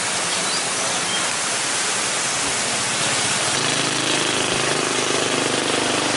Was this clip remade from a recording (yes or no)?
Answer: no